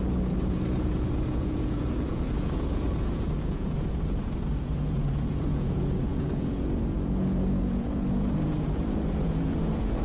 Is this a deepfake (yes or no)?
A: yes